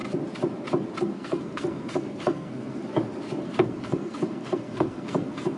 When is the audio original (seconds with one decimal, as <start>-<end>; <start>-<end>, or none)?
0.0-1.0; 2.8-3.4